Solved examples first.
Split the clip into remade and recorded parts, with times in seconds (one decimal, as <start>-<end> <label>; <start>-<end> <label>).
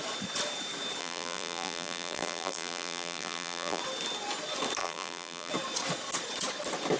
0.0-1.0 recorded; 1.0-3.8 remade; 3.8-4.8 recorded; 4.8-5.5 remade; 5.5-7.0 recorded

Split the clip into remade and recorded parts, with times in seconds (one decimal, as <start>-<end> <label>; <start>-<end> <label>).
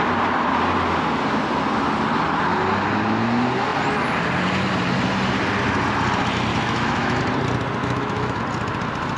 0.0-6.5 recorded; 6.5-7.2 remade; 7.2-7.8 recorded; 7.8-8.4 remade; 8.4-9.2 recorded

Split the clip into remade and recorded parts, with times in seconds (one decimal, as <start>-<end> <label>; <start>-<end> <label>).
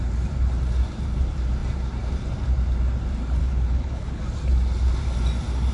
0.0-3.4 recorded; 3.4-4.2 remade; 4.2-5.7 recorded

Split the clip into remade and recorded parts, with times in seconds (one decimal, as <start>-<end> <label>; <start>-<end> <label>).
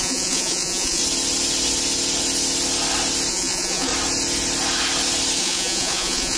0.0-1.0 remade; 1.0-3.3 recorded; 3.3-3.9 remade; 3.9-5.4 recorded; 5.4-6.4 remade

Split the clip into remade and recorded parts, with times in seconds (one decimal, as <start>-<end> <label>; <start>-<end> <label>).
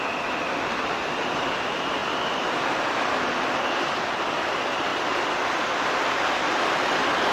0.0-7.3 recorded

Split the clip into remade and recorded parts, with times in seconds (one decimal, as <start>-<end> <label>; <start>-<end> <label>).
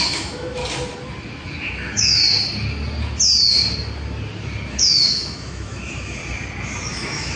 0.0-0.6 remade; 0.6-1.6 recorded; 1.6-2.2 remade; 2.2-4.7 recorded; 4.7-6.2 remade; 6.2-6.9 recorded; 6.9-7.4 remade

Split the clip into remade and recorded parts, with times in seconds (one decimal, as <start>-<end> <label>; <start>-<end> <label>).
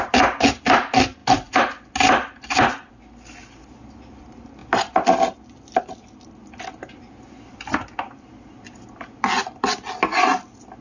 0.0-10.8 recorded